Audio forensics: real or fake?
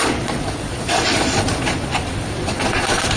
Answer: fake